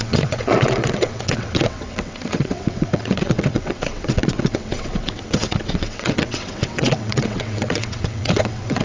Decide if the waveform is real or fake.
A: fake